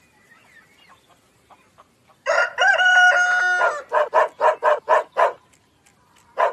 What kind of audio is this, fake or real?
real